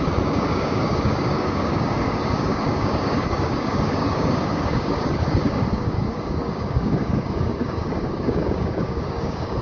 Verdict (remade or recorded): remade